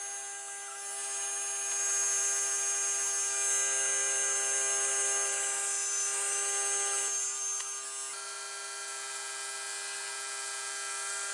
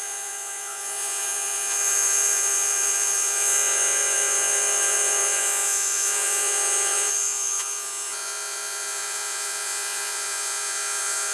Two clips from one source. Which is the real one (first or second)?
first